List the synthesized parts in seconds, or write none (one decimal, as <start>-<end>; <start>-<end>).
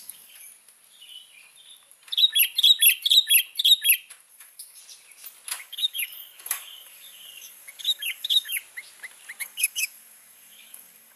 0.0-0.5; 4.3-4.8; 5.6-8.6; 9.4-11.2